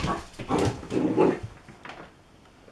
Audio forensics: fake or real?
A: real